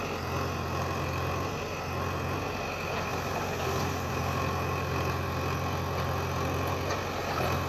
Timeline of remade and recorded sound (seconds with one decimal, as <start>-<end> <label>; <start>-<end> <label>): 0.0-7.7 recorded